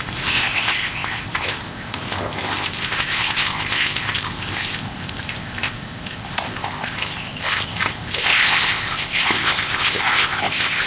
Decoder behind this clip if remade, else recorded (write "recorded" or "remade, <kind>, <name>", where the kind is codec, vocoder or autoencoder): remade, codec, ZipCodec